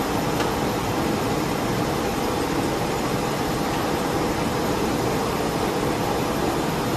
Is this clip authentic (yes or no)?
yes